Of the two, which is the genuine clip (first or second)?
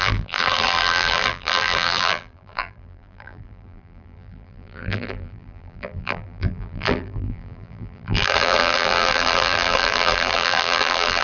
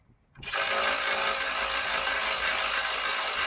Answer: second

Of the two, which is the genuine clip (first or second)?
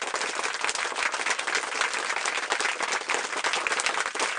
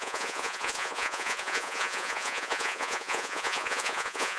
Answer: first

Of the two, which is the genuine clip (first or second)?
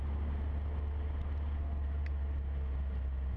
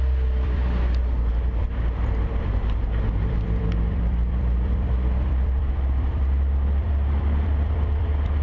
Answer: first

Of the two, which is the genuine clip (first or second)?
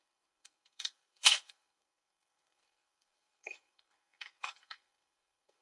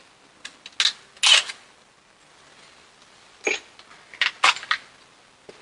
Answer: second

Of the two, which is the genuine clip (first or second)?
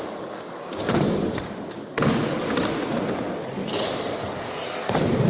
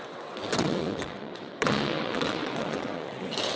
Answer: first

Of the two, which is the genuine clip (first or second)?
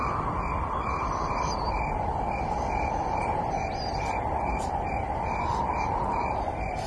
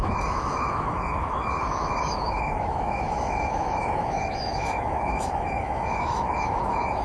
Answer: first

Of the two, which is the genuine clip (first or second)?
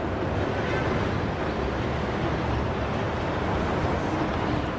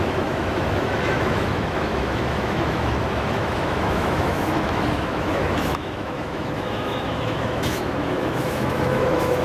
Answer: first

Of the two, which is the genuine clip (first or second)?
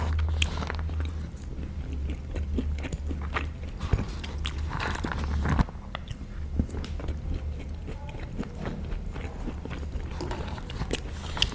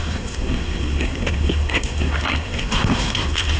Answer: first